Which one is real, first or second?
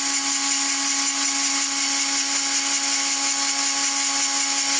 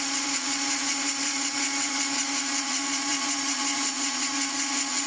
first